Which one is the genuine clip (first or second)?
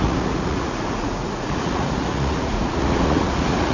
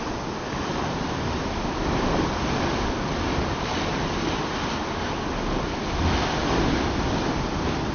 second